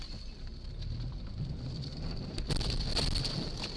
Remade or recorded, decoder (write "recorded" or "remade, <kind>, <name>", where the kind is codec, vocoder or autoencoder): recorded